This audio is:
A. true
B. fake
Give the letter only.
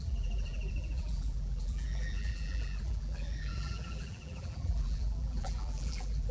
B